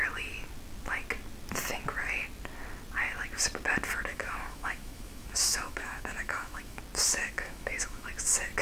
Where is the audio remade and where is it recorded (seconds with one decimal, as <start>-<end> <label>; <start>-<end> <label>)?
0.0-4.1 recorded; 4.1-6.8 remade; 6.8-7.2 recorded; 7.2-8.1 remade; 8.1-8.6 recorded